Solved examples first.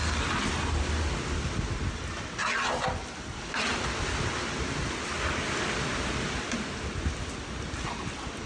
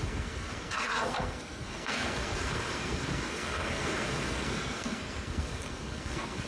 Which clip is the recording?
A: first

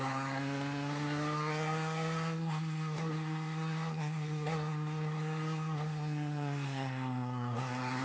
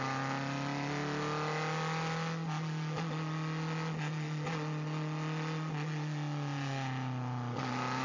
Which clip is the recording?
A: second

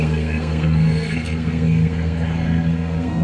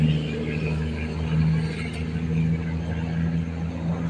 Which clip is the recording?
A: second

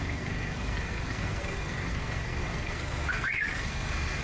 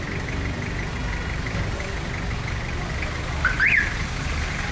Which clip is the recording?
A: second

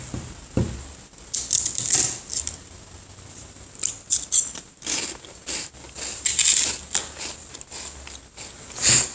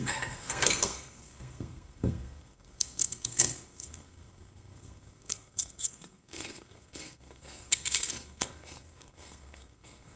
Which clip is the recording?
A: first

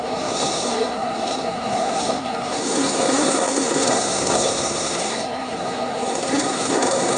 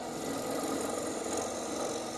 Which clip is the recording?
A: second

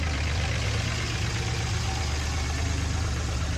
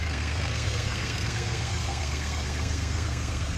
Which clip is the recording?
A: first